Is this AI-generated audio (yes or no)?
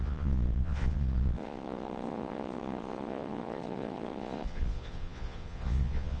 yes